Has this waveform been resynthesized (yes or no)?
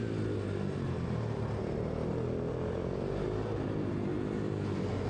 no